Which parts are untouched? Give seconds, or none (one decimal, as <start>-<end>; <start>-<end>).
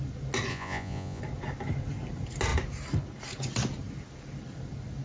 0.0-0.5; 1.2-5.0